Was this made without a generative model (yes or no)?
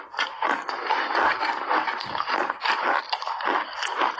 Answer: yes